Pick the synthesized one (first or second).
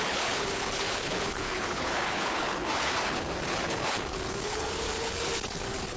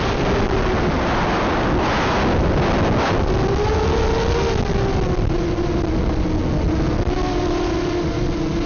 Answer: first